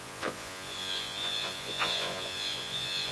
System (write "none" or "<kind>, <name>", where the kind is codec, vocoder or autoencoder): vocoder, Vocos